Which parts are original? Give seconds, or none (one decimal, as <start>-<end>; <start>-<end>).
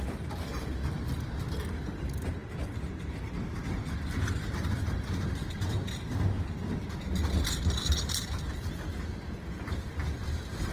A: 0.0-10.7